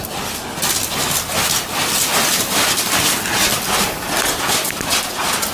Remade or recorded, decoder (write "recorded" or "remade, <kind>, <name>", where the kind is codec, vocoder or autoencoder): recorded